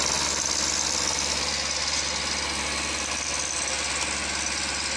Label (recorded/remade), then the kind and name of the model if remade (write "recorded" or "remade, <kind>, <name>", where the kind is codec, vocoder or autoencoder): recorded